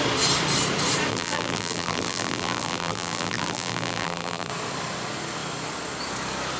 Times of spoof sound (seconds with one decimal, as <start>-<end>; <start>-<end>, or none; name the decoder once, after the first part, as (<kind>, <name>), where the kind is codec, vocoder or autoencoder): 1.1-4.5 (vocoder, BigVGAN v2)